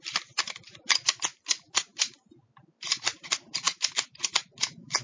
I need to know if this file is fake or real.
fake